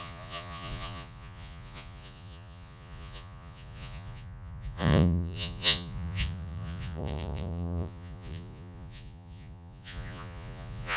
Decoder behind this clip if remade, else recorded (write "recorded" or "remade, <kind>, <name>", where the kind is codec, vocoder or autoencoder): remade, vocoder, Vocos